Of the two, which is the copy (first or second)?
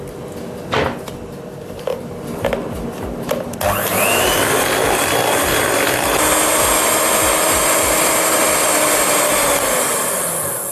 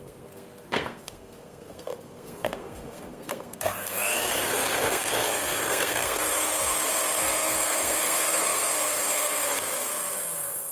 second